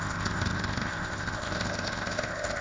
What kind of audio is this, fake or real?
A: fake